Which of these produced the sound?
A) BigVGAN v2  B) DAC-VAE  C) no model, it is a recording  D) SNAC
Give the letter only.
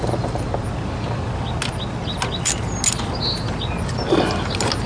C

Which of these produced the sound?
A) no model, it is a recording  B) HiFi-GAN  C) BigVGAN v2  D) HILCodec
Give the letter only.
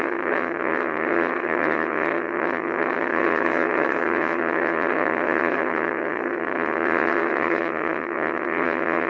B